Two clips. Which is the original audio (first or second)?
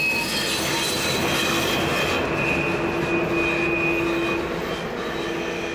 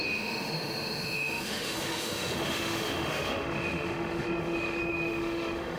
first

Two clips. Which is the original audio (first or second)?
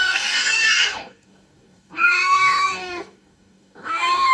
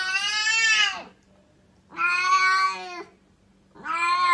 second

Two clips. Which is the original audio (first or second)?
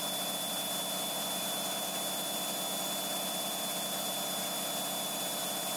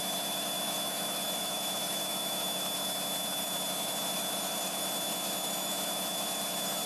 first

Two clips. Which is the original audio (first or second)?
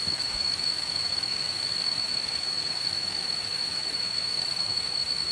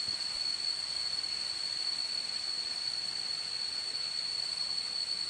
second